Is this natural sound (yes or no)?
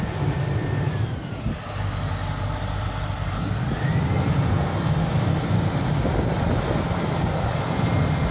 yes